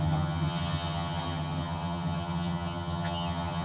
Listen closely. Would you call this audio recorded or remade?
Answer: remade